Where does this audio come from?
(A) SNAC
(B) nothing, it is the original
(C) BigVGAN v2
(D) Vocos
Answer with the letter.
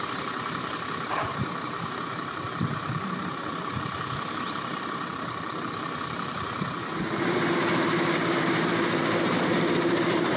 C